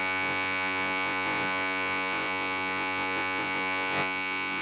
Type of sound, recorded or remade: remade